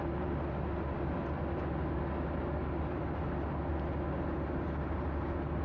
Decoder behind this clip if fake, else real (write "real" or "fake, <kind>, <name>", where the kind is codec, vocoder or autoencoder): real